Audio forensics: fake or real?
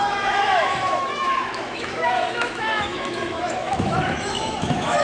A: fake